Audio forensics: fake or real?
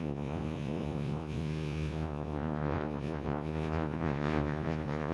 fake